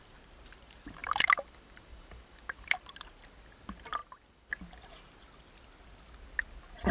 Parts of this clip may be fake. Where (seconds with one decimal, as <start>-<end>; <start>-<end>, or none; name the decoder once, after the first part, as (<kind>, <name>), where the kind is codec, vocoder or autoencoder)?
1.0-2.8 (vocoder, BigVGAN v2); 4.0-4.5